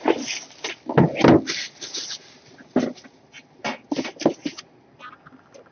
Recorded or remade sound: recorded